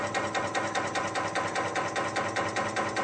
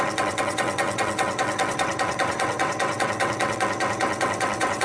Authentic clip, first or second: first